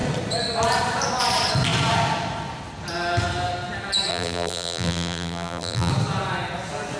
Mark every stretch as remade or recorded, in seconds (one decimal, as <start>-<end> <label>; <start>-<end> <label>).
0.0-4.1 recorded; 4.1-5.9 remade; 5.9-7.0 recorded